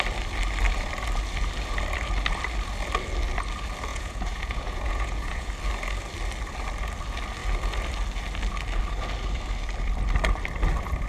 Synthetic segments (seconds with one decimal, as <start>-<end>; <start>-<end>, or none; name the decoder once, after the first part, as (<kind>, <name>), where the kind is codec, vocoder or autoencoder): 3.9-5.5 (vocoder, Vocos)